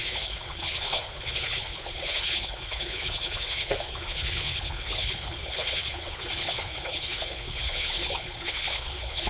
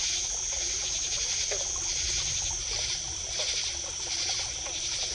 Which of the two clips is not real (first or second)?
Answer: first